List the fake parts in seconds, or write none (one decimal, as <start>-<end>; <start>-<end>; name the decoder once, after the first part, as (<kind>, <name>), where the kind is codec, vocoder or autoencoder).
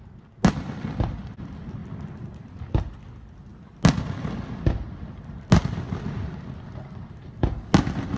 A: none